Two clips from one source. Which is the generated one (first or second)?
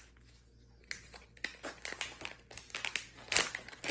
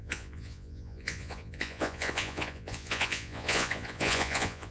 second